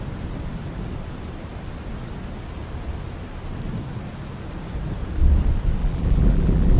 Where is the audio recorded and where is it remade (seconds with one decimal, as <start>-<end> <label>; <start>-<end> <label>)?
0.0-5.8 recorded; 5.8-6.8 remade